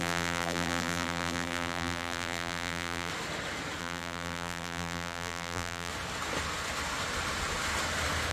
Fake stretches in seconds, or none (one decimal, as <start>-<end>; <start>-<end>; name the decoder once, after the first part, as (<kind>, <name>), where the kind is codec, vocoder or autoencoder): 0.0-3.1 (vocoder, BigVGAN v2); 3.8-5.9